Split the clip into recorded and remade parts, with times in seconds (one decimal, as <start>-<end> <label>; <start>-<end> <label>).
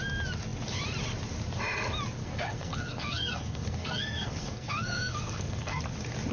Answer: 0.0-2.2 recorded; 2.2-5.8 remade; 5.8-6.3 recorded